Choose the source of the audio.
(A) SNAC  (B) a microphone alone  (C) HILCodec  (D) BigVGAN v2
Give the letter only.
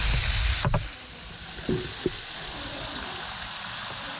B